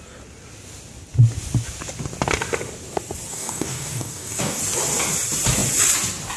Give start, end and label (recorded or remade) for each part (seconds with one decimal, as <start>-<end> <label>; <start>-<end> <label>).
0.0-3.3 recorded; 3.3-4.6 remade; 4.6-6.4 recorded